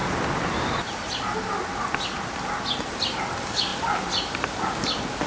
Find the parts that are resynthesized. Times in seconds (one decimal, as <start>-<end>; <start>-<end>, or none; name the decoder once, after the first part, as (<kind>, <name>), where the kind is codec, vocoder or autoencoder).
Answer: none